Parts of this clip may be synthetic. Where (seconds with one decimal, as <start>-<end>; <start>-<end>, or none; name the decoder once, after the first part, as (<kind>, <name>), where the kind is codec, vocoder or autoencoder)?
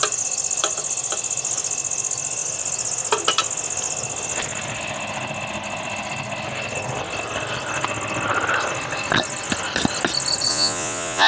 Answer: 10.5-11.3 (vocoder, Vocos)